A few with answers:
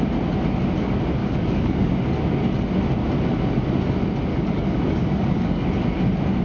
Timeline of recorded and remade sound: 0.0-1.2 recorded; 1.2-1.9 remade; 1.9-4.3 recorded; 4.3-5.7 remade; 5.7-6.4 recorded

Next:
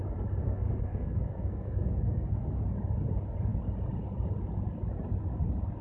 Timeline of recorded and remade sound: 0.0-0.4 recorded; 0.4-2.6 remade; 2.6-5.8 recorded

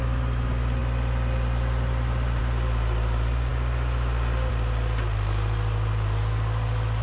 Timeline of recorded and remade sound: 0.0-7.0 recorded